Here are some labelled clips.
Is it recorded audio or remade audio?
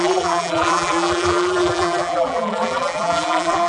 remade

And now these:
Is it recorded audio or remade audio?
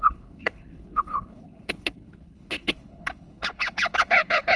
remade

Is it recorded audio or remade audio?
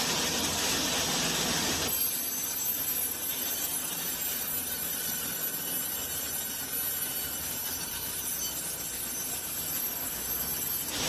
recorded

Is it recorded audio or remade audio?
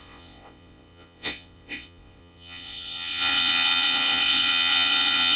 remade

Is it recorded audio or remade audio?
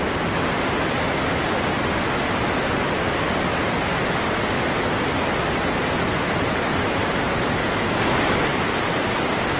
recorded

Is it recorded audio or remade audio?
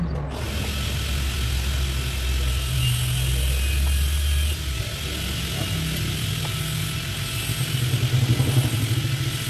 recorded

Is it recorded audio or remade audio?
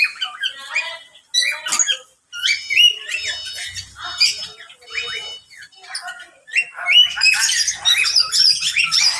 recorded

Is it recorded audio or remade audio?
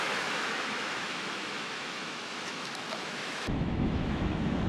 remade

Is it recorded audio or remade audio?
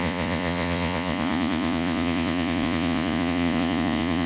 remade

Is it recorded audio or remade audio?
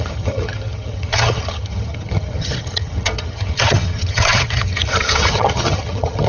remade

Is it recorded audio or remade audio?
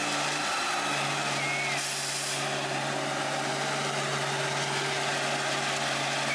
recorded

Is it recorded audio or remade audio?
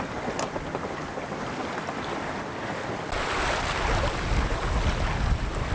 recorded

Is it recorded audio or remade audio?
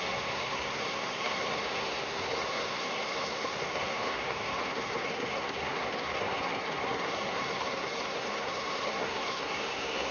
remade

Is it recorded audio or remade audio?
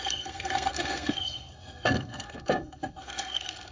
remade